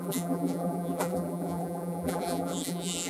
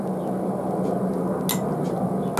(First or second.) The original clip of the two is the second